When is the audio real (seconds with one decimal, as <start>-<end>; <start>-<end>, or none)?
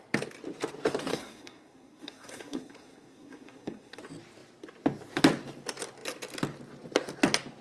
0.0-1.1; 4.0-7.6